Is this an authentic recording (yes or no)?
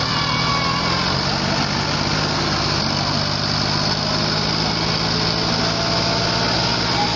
yes